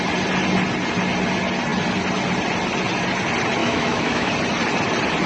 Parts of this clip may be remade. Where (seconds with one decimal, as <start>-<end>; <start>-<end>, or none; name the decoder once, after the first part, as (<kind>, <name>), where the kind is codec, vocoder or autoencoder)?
3.6-4.3 (autoencoder, DAC-VAE)